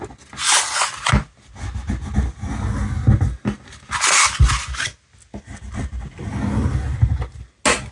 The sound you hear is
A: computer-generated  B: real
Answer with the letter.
B